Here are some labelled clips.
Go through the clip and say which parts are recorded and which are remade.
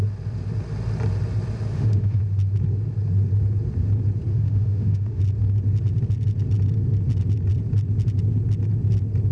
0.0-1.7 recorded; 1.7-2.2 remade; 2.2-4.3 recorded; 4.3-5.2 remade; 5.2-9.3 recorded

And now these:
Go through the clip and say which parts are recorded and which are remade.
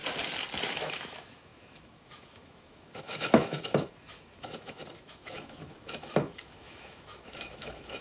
0.0-0.7 recorded; 0.7-8.0 remade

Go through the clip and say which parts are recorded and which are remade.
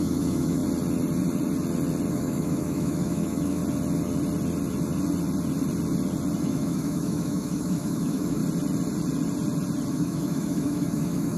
0.0-0.6 remade; 0.6-2.1 recorded; 2.1-3.6 remade; 3.6-6.4 recorded; 6.4-8.4 remade; 8.4-9.9 recorded; 9.9-11.4 remade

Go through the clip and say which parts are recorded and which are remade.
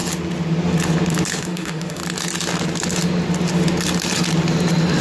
0.0-1.3 recorded; 1.3-2.0 remade; 2.0-5.0 recorded